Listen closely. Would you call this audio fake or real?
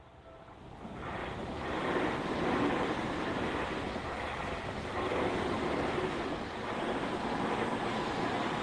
real